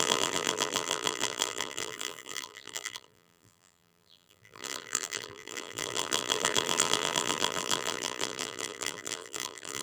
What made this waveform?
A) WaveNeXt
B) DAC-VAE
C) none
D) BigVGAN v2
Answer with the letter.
D